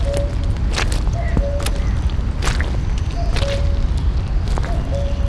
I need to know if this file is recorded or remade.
recorded